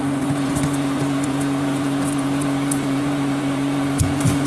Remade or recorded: remade